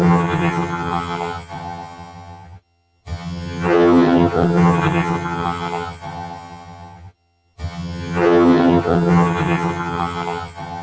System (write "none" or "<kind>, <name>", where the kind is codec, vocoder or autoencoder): vocoder, HiFi-GAN